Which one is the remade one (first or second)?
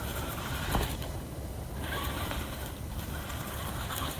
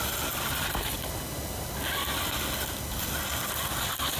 first